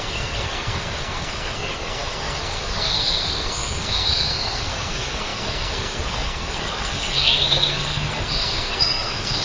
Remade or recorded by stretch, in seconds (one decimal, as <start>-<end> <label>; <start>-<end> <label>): 0.0-9.4 remade